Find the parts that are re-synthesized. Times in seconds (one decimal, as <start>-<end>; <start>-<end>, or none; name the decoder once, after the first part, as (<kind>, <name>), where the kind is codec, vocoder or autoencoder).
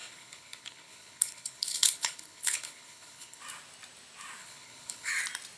0.0-3.4 (codec, HILCodec); 4.4-5.1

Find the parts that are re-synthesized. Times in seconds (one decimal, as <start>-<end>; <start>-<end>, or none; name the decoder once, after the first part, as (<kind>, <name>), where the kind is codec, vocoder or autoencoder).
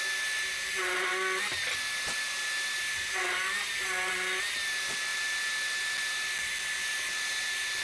none